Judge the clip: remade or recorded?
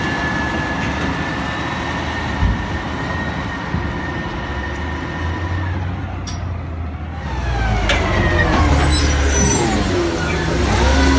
recorded